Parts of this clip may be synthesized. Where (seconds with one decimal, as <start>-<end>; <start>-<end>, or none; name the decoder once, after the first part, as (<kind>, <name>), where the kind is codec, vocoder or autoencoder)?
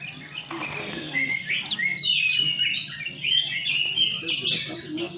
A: 0.8-1.3 (codec, SNAC)